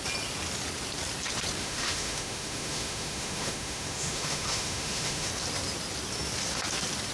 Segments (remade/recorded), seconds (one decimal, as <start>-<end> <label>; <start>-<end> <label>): 0.0-1.6 recorded; 1.6-5.3 remade; 5.3-7.1 recorded